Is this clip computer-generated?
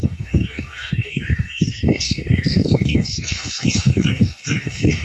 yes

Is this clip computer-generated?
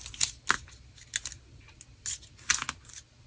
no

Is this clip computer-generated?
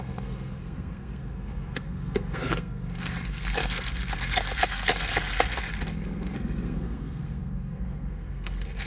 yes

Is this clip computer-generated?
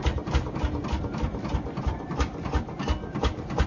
no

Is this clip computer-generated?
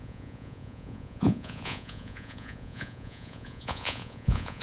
yes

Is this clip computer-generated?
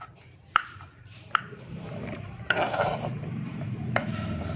yes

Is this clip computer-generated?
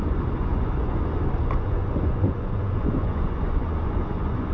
yes